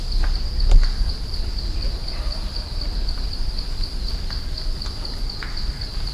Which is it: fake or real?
real